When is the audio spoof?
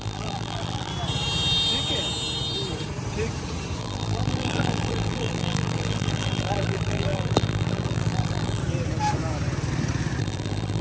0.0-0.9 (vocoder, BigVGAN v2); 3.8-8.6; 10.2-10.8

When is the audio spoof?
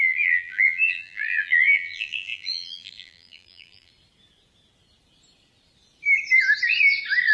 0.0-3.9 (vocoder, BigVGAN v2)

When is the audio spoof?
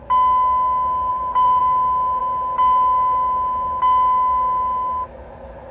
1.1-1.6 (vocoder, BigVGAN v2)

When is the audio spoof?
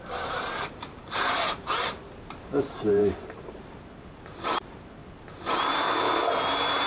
0.0-5.0 (vocoder, BigVGAN v2)